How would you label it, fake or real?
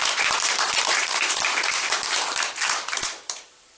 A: fake